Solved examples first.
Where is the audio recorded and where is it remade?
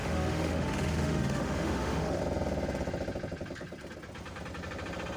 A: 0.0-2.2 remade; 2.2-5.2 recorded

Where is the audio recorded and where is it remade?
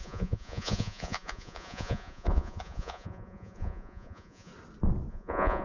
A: 0.0-4.5 remade; 4.5-5.1 recorded; 5.1-5.6 remade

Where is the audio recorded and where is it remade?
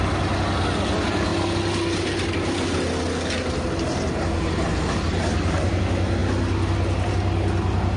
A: 0.0-4.7 recorded; 4.7-5.8 remade; 5.8-8.0 recorded